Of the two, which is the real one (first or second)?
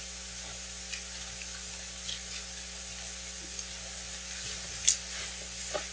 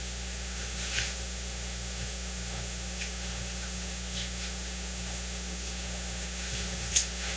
first